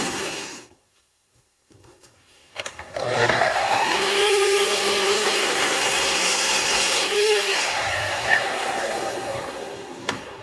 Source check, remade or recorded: remade